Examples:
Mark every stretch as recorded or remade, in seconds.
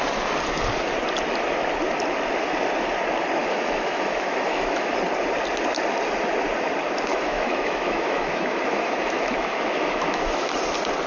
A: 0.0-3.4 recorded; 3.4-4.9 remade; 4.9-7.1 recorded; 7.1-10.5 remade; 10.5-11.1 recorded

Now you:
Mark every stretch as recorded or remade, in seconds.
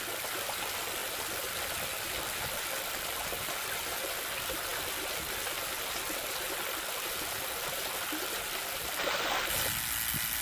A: 0.0-10.4 recorded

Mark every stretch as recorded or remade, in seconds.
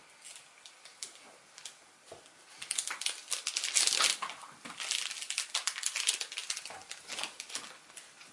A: 0.0-8.3 recorded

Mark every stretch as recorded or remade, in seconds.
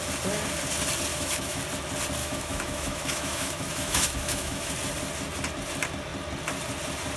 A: 0.0-1.1 recorded; 1.1-1.6 remade; 1.6-2.2 recorded; 2.2-4.7 remade; 4.7-7.2 recorded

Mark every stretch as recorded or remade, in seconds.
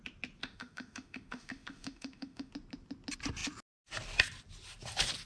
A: 0.0-0.4 recorded; 0.4-2.5 remade; 2.5-5.3 recorded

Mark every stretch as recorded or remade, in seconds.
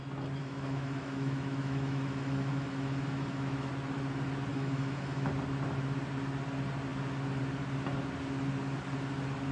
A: 0.0-0.4 recorded; 0.4-3.7 remade; 3.7-4.5 recorded; 4.5-5.3 remade; 5.3-9.5 recorded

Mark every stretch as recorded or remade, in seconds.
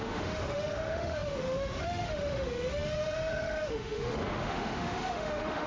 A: 0.0-5.7 remade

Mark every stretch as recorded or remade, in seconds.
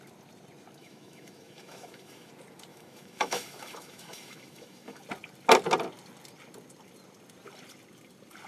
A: 0.0-0.8 recorded; 0.8-2.3 remade; 2.3-2.7 recorded; 2.7-5.0 remade; 5.0-8.5 recorded